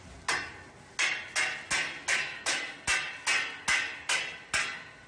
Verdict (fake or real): real